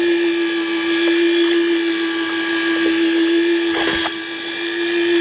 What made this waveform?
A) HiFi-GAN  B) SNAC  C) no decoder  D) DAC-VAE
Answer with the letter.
C